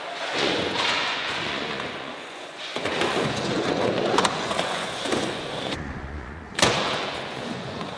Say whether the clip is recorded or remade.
remade